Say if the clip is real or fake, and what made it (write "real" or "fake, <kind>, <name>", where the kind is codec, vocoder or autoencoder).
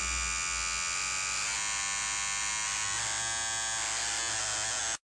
real